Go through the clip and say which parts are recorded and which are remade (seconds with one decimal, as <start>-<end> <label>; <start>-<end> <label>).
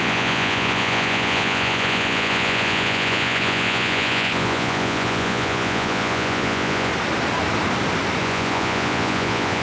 0.0-6.9 remade; 6.9-8.2 recorded; 8.2-9.6 remade